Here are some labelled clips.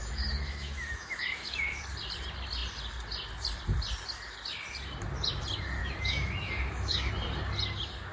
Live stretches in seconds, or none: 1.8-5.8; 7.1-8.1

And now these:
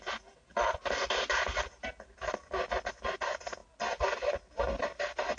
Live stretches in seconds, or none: 0.5-3.1; 3.6-4.8

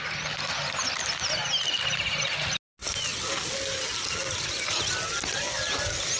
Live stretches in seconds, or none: 0.0-6.2

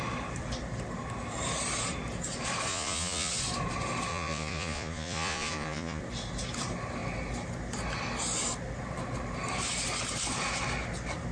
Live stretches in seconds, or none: 0.0-2.7; 3.3-4.1; 6.0-11.3

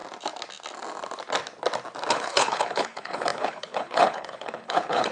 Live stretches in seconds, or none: 0.0-2.1